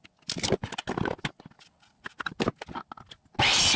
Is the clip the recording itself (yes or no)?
yes